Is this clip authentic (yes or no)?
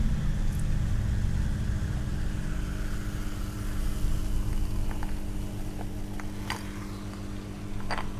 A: yes